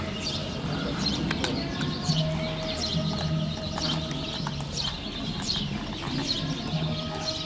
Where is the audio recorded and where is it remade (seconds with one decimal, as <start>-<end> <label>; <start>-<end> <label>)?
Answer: 0.0-7.5 recorded